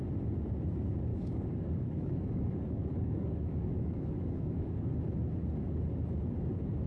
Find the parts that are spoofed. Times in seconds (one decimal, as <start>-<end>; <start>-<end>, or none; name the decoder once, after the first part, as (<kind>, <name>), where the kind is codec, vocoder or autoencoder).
1.1-4.9 (codec, DAC)